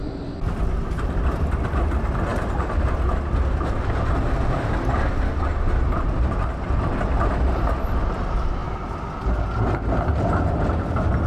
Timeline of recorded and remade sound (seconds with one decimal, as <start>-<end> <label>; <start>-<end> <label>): 0.0-1.3 remade; 1.3-11.3 recorded